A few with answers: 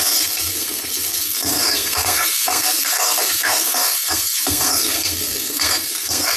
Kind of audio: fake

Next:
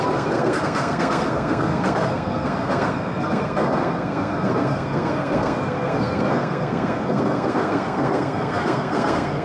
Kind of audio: fake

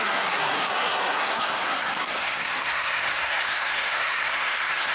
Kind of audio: fake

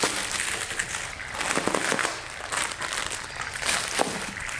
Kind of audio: real